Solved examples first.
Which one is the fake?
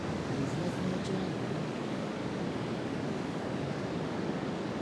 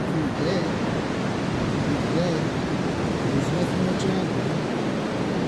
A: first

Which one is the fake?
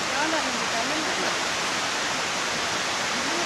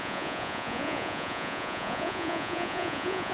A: second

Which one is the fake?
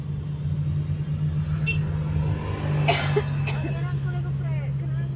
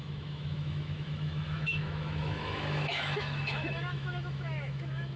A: second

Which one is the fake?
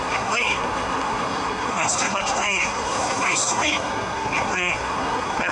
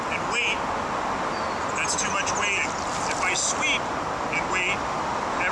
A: first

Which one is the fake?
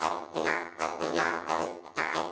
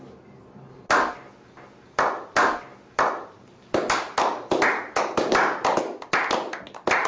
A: first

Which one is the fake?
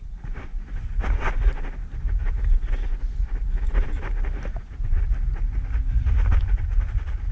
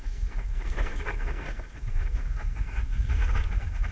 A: second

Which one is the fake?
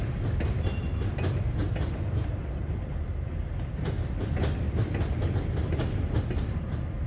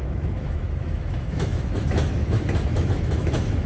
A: second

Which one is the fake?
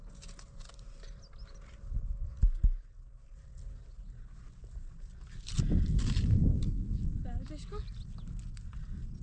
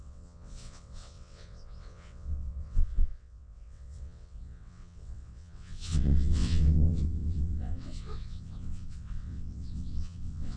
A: second